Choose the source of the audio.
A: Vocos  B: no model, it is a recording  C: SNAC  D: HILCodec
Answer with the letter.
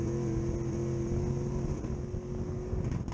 B